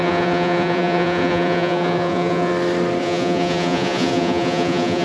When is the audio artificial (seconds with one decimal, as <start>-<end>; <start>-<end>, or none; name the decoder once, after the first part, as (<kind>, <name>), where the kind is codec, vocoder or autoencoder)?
0.0-2.5 (vocoder, Vocos); 3.0-5.0